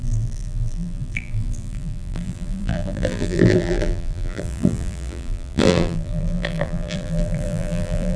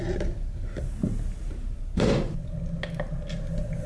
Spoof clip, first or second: first